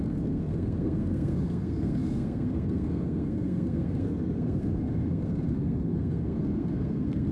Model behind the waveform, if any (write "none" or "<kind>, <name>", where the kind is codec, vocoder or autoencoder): codec, SNAC